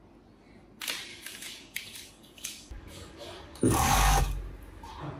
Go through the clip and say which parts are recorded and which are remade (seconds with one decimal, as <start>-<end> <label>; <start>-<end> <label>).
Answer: 0.0-1.1 recorded; 1.1-4.2 remade; 4.2-5.2 recorded